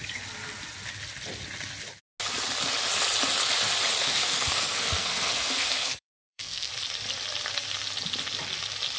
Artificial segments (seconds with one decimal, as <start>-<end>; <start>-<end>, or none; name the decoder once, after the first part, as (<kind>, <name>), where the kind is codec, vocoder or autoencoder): 4.0-6.7 (codec, SNAC)